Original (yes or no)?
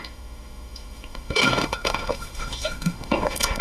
no